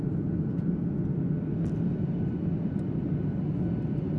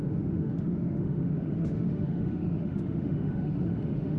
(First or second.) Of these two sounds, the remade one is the second